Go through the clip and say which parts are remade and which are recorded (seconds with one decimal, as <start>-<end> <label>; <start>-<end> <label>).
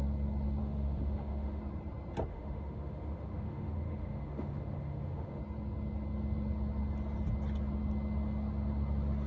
0.0-0.6 recorded; 0.6-1.6 remade; 1.6-2.3 recorded; 2.3-5.4 remade; 5.4-9.3 recorded